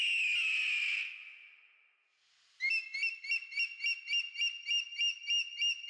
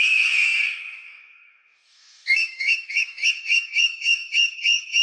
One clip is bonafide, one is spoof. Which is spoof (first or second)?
second